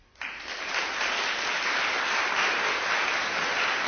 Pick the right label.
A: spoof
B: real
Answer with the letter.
B